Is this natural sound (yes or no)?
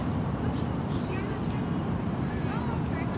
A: yes